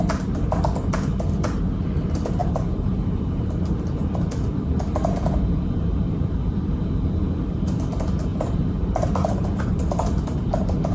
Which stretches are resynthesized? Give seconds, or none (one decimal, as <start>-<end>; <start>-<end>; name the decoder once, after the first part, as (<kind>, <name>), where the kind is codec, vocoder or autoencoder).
2.4-3.6 (vocoder, BigVGAN v2); 8.3-9.6